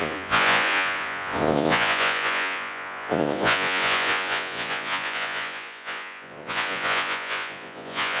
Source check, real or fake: fake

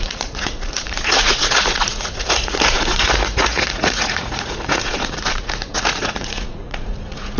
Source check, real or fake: fake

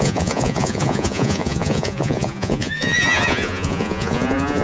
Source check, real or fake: fake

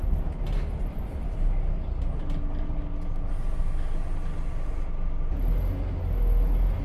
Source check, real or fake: real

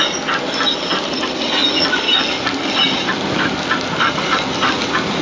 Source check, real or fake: real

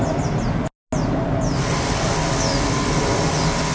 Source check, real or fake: real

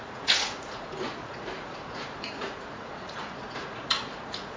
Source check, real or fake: fake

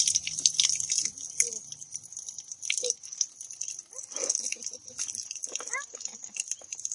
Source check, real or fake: real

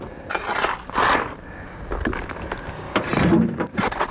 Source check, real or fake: real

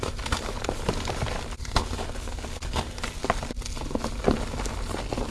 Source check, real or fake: real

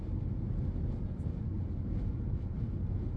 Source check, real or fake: real